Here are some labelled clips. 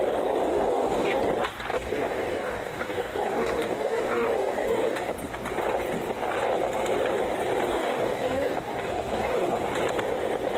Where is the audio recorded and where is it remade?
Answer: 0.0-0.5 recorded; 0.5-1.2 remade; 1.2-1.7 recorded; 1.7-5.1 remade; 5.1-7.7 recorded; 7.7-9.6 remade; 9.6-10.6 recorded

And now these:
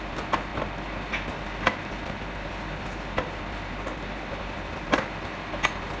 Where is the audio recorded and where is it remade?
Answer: 0.0-6.0 recorded

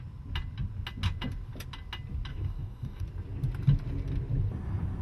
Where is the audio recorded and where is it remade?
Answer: 0.0-2.3 recorded; 2.3-3.0 remade; 3.0-5.0 recorded

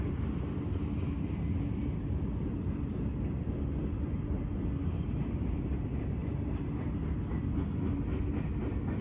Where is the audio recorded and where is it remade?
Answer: 0.0-9.0 recorded

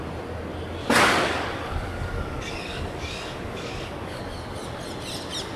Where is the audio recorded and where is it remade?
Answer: 0.0-0.8 recorded; 0.8-4.2 remade; 4.2-5.6 recorded